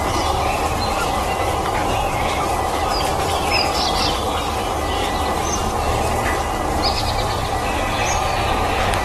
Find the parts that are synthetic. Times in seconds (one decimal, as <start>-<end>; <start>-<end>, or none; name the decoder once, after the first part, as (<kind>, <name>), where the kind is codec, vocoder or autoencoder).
0.0-5.0 (vocoder, BigVGAN v2); 8.5-9.0